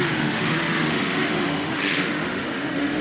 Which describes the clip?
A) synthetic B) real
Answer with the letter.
A